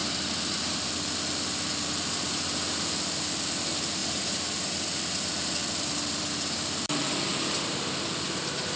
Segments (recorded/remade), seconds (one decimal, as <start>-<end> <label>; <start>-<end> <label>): 0.0-8.8 remade